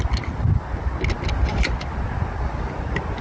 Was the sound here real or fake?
real